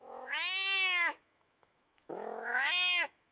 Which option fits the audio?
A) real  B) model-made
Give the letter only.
B